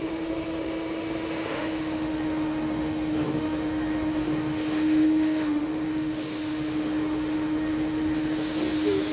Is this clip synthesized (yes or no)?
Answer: yes